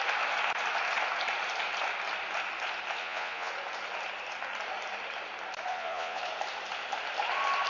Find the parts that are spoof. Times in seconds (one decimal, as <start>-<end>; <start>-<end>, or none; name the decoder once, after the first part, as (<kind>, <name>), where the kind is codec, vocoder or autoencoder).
3.0-3.5 (vocoder, Vocos); 5.7-6.2